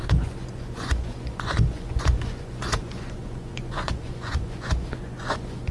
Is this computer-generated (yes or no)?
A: yes